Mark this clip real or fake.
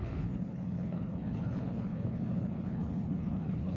fake